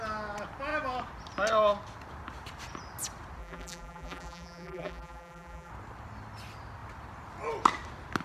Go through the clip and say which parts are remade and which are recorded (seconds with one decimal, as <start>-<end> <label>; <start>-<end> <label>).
0.0-3.4 recorded; 3.4-5.7 remade; 5.7-8.2 recorded